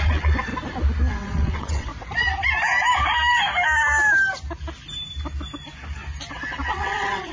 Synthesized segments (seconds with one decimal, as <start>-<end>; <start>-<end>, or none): 0.0-0.5; 1.1-1.9; 6.3-7.3